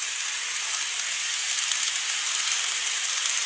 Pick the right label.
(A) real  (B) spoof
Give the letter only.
A